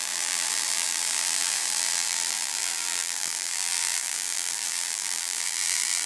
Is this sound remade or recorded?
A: remade